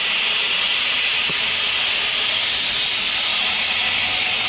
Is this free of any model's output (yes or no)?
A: yes